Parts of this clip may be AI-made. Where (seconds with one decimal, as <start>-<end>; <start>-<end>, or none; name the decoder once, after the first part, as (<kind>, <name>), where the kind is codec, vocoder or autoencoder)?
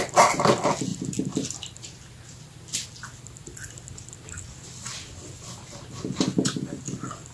0.9-2.8 (vocoder, BigVGAN v2)